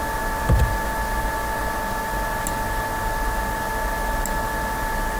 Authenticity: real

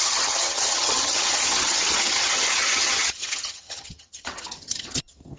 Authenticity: fake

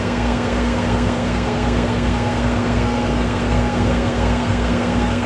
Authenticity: fake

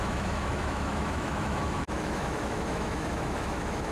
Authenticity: fake